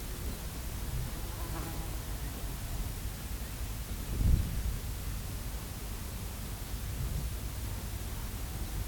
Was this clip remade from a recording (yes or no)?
no